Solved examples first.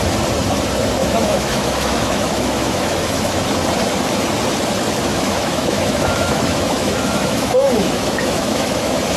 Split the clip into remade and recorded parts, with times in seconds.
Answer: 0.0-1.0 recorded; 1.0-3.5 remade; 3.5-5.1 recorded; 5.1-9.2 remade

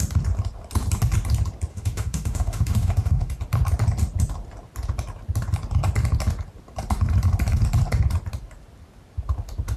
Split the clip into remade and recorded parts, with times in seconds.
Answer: 0.0-1.7 recorded; 1.7-3.3 remade; 3.3-9.8 recorded

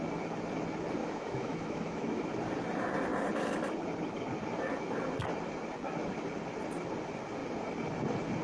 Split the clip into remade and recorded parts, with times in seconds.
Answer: 0.0-1.0 recorded; 1.0-2.3 remade; 2.3-8.4 recorded

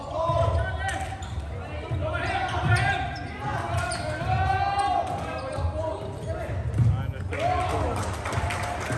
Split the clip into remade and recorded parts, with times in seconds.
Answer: 0.0-9.0 recorded

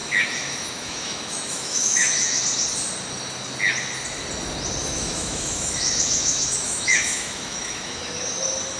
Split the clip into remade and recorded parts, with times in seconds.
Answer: 0.0-2.4 remade; 2.4-4.8 recorded; 4.8-8.0 remade; 8.0-8.8 recorded

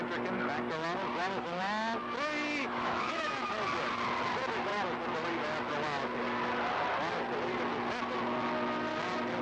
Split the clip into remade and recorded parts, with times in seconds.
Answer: 0.0-2.6 recorded; 2.6-3.5 remade; 3.5-9.4 recorded

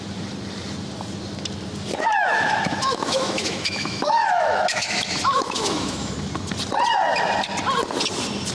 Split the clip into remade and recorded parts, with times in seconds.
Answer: 0.0-1.9 recorded; 1.9-6.1 remade; 6.1-8.5 recorded